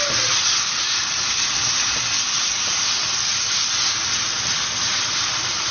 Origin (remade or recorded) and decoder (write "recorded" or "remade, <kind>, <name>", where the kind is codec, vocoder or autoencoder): recorded